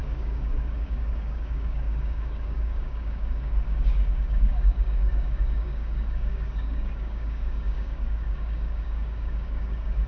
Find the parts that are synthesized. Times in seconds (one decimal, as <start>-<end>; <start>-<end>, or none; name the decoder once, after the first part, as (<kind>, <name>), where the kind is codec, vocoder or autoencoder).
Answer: 0.0-10.1 (codec, DAC)